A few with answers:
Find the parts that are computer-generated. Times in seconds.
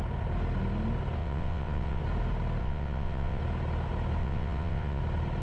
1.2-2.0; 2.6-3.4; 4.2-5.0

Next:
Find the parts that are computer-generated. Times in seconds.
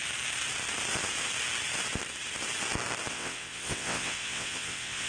3.1-5.1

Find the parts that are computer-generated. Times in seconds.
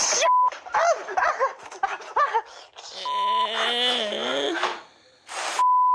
none